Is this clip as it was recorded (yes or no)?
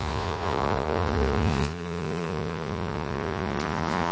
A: no